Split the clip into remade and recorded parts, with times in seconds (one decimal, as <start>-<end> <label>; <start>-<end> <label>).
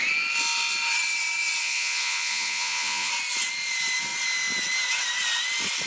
0.0-1.6 recorded; 1.6-3.1 remade; 3.1-5.9 recorded